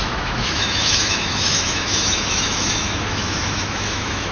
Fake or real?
fake